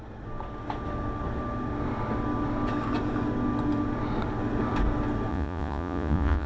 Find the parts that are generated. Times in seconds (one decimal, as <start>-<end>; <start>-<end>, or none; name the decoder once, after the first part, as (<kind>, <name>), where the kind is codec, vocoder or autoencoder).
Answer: 5.3-6.5 (vocoder, Vocos)